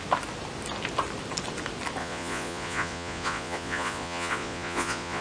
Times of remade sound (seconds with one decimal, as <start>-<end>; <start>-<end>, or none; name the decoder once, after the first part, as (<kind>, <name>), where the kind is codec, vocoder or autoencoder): 2.0-5.2 (vocoder, Vocos)

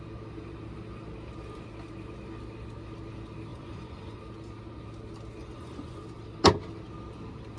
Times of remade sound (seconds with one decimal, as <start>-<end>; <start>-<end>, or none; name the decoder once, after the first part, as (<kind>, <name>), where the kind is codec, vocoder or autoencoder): 3.5-4.2 (vocoder, Vocos); 5.4-6.0